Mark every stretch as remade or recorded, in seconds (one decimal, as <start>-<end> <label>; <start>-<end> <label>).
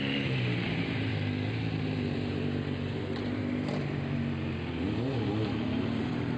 0.0-1.1 remade; 1.1-1.8 recorded; 1.8-3.4 remade; 3.4-5.7 recorded; 5.7-6.4 remade